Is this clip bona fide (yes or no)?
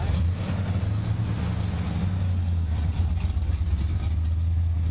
yes